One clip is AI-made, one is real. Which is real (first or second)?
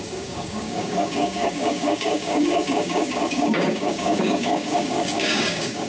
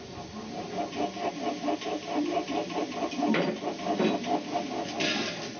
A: second